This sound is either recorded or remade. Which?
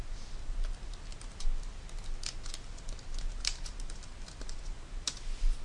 recorded